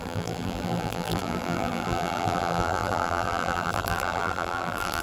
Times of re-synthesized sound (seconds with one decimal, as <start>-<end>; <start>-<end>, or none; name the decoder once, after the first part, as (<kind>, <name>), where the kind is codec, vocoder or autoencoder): 0.0-5.0 (vocoder, BigVGAN v2)

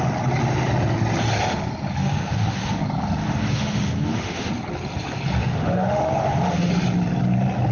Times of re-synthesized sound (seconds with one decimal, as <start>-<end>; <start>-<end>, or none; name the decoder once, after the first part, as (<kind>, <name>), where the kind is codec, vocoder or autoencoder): 2.0-2.8 (autoencoder, DAC-VAE); 3.2-4.5; 5.4-6.7

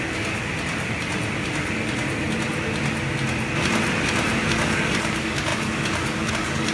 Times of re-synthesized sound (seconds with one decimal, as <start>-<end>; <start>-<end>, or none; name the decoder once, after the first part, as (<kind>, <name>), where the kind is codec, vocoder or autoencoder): 0.0-0.5 (codec, DAC); 4.5-6.7

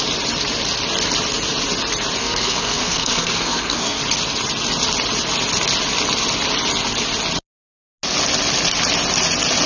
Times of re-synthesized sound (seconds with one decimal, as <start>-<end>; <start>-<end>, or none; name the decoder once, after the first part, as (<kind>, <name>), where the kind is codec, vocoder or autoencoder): 2.2-4.0 (codec, SNAC)

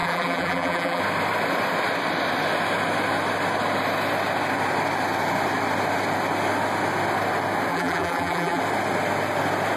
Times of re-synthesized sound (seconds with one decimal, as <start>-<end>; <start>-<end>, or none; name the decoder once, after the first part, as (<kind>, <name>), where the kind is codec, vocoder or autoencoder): 0.0-1.0 (vocoder, BigVGAN v2); 7.7-8.6

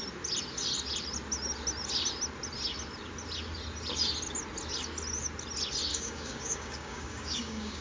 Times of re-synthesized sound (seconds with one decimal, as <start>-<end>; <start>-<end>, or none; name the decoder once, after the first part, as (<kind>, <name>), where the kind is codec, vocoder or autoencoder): 5.9-7.8 (codec, DAC)